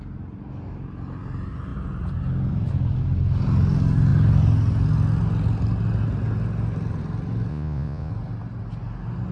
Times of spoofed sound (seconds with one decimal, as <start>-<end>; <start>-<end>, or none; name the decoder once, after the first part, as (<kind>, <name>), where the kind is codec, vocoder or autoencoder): 7.5-8.1 (vocoder, Vocos)